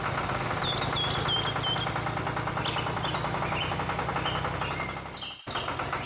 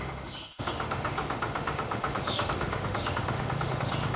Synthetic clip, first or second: second